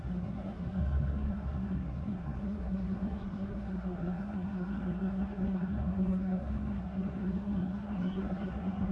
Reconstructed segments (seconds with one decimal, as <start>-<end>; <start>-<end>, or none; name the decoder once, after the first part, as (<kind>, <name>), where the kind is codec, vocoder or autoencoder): 0.0-8.9 (codec, SNAC)